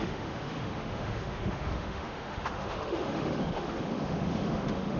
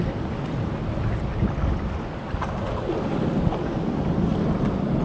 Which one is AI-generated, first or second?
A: first